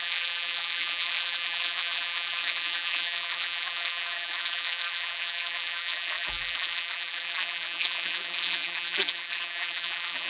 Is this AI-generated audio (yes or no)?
yes